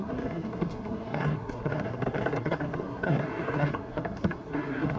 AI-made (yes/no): yes